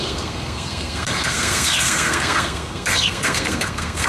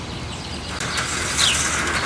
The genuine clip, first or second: second